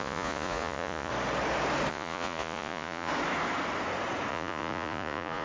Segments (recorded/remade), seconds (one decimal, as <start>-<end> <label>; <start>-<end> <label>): 0.0-1.1 remade; 1.1-1.9 recorded; 1.9-3.1 remade; 3.1-4.3 recorded; 4.3-5.4 remade